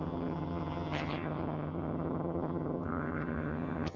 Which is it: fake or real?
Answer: fake